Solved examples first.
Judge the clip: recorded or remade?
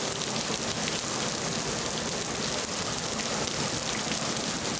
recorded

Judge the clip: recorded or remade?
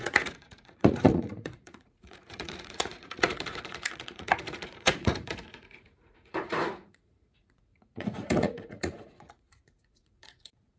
remade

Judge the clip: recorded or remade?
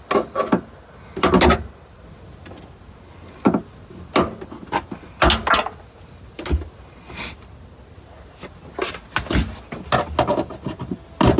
recorded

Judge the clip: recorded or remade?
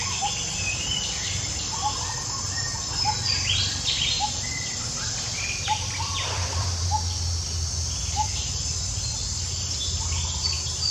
remade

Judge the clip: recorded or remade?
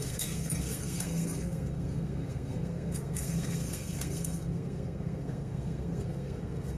remade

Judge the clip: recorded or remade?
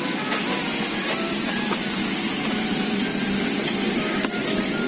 recorded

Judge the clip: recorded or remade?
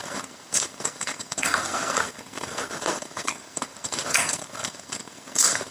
remade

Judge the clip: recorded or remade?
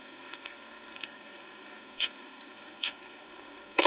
remade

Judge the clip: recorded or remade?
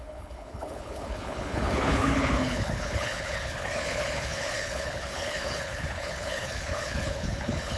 remade